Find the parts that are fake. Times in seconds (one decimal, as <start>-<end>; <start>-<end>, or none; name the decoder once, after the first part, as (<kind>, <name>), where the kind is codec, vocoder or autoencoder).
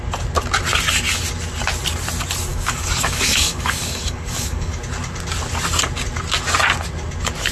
2.5-4.8 (codec, DAC)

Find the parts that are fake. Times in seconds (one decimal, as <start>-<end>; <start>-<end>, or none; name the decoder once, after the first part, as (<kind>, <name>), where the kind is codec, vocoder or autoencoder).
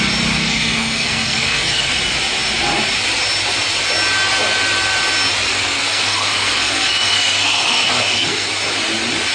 0.4-2.0 (codec, SNAC); 5.5-8.5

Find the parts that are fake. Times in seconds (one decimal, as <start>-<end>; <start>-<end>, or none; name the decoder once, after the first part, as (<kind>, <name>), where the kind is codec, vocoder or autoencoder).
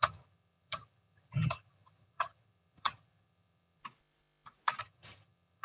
0.0-3.8 (vocoder, HiFi-GAN); 4.8-5.6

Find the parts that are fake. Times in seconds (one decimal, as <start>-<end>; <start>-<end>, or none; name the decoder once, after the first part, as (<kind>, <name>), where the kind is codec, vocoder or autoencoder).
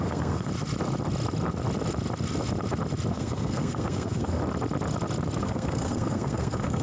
0.0-0.5 (codec, SNAC); 3.1-4.4; 5.4-6.8